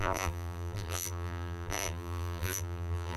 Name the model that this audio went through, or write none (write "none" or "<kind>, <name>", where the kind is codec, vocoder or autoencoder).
vocoder, BigVGAN v2